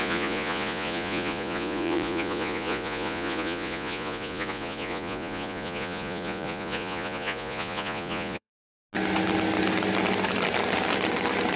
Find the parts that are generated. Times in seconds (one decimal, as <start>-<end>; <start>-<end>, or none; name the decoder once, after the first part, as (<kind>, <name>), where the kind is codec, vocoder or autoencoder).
0.0-8.5 (vocoder, Vocos)